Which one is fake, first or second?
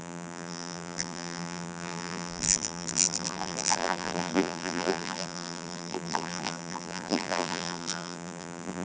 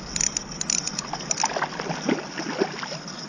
first